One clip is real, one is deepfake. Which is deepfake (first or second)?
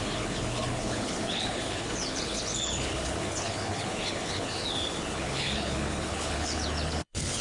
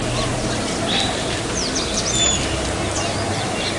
first